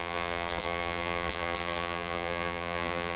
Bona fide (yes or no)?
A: no